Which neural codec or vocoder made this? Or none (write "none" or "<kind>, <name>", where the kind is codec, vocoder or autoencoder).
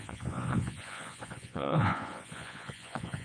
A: vocoder, Vocos